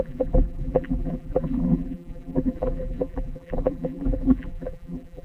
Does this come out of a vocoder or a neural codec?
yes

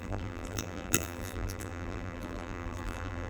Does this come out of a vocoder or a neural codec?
yes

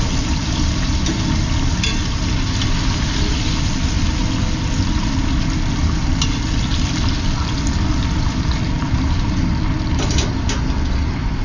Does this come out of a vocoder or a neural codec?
no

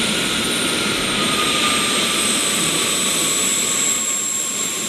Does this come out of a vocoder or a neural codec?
yes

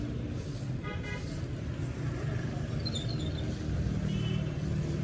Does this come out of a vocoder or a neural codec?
no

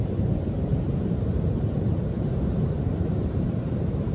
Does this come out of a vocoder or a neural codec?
yes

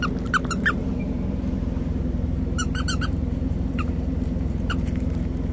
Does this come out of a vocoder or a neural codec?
yes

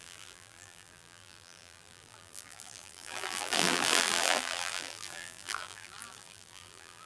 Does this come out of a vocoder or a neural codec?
yes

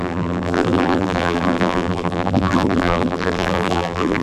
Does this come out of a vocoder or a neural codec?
yes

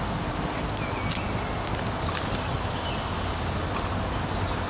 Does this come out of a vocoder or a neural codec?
no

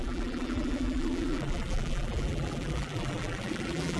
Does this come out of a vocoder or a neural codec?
yes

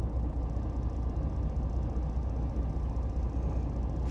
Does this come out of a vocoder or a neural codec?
no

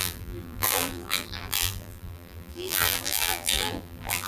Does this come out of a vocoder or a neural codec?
yes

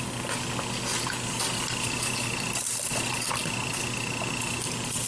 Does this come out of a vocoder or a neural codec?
no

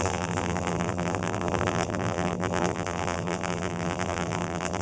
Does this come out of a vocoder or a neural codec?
yes